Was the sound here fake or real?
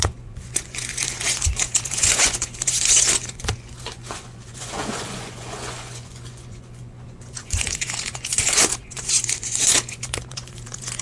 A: fake